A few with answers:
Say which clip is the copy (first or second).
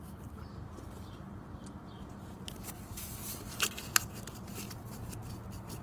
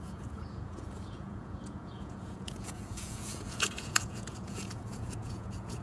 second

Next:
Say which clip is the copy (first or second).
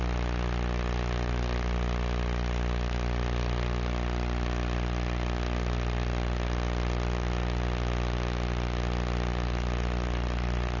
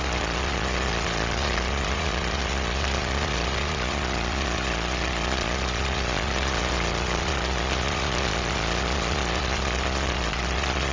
second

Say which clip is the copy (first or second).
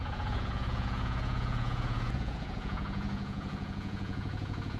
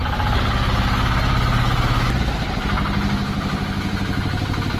first